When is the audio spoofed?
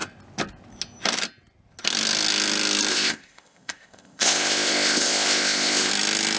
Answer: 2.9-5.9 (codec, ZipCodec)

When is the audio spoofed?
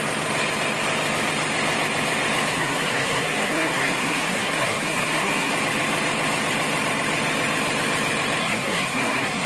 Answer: 2.5-5.5 (codec, SNAC); 8.4-9.5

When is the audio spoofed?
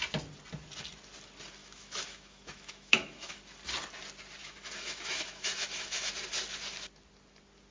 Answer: 1.6-3.4 (autoencoder, DAC-VAE); 4.4-6.1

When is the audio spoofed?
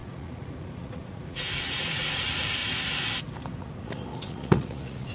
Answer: 0.0-2.6 (vocoder, Vocos); 3.6-5.1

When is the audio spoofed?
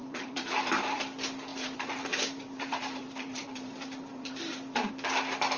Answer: 0.0-1.0 (vocoder, BigVGAN v2); 1.5-4.9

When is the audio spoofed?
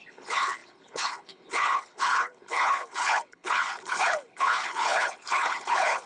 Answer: 0.0-6.1 (codec, HILCodec)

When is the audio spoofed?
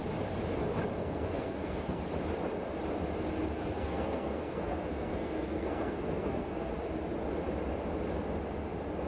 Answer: 1.0-2.0 (codec, SNAC); 3.5-6.7